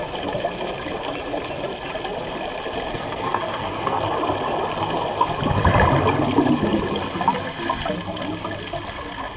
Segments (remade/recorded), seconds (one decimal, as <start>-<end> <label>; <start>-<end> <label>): 0.0-2.9 recorded; 2.9-4.0 remade; 4.0-9.4 recorded